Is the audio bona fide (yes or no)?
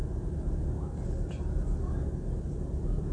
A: yes